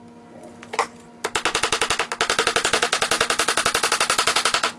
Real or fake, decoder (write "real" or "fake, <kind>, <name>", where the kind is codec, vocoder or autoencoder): real